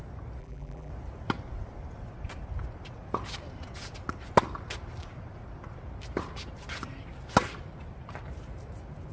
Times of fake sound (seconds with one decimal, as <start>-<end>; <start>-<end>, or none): 0.4-0.9